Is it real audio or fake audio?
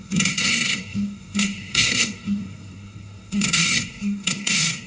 fake